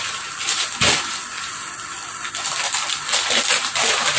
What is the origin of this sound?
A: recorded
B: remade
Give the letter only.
A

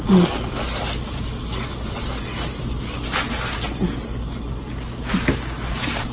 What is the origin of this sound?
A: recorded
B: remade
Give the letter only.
A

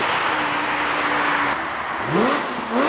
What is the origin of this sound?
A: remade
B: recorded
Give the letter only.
B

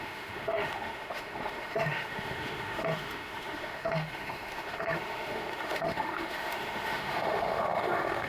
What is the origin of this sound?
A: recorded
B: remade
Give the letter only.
B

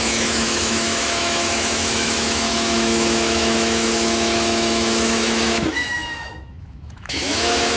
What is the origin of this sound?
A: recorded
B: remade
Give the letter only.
B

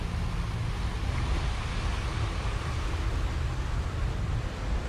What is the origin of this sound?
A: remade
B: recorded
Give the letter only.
B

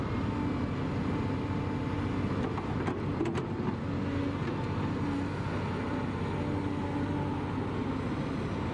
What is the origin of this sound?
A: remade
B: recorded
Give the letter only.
B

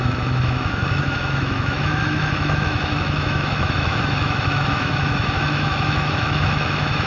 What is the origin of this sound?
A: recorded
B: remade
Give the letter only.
B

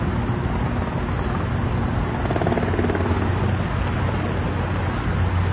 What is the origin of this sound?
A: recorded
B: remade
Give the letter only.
A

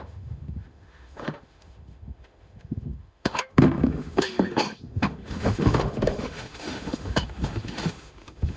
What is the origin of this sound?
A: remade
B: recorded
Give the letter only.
A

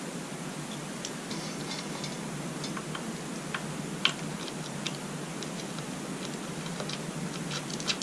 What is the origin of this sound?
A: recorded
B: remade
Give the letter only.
A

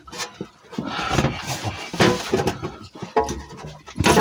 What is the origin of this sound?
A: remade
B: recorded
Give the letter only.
B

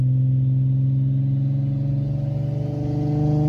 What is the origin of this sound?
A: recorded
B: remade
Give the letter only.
A